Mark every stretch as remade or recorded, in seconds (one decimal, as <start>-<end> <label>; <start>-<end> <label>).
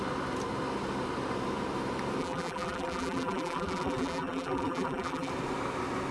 0.0-2.2 recorded; 2.2-5.3 remade; 5.3-6.1 recorded